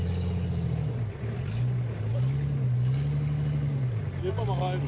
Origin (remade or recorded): recorded